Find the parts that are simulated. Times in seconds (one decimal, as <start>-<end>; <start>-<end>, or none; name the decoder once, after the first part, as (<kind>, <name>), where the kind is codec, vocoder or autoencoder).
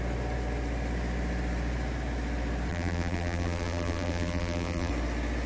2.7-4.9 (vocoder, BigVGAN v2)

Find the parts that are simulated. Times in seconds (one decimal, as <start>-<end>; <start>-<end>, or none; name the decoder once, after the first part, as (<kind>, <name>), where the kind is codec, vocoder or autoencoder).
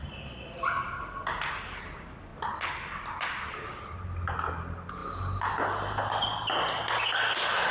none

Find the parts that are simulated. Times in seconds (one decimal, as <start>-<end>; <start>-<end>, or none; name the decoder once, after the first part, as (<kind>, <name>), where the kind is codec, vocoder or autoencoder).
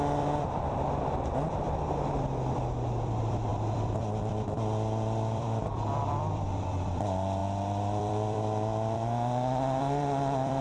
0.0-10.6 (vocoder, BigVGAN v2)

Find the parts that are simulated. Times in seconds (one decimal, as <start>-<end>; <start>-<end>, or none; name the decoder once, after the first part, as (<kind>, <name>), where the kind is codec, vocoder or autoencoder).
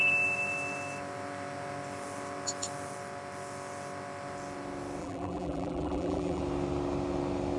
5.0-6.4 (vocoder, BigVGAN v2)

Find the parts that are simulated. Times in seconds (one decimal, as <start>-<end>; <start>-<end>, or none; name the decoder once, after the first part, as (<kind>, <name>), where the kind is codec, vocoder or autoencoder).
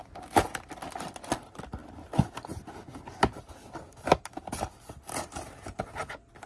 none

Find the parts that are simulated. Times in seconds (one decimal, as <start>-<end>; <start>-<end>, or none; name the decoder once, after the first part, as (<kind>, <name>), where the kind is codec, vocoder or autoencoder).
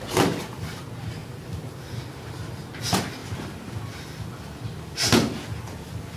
1.2-2.3 (vocoder, BigVGAN v2); 3.2-4.8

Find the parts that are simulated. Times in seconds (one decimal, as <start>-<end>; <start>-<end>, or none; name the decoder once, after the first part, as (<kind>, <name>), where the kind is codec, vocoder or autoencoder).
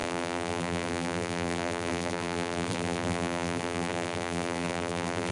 0.0-5.3 (vocoder, BigVGAN v2)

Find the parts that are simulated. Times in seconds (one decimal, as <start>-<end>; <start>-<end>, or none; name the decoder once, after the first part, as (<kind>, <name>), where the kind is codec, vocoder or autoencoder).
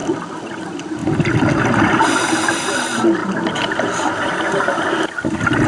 none